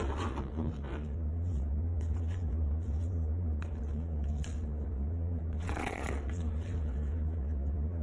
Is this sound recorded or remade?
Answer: remade